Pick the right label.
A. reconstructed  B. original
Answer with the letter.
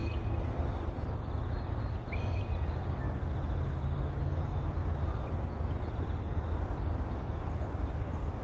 B